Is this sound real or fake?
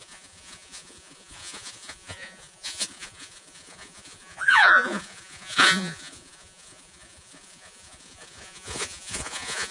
fake